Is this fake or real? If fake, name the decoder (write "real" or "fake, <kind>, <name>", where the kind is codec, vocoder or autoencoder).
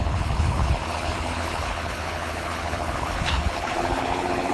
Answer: fake, codec, HILCodec